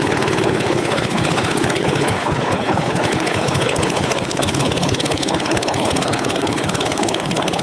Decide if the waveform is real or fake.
fake